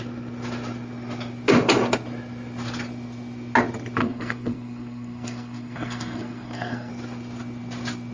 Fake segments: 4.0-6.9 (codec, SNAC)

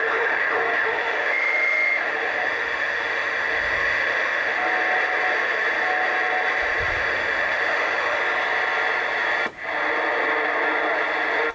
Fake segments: 0.0-4.6 (autoencoder, DAC-VAE); 7.0-8.2